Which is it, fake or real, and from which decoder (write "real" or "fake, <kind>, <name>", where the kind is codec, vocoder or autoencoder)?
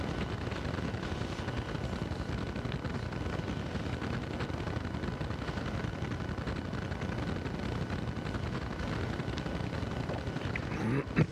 real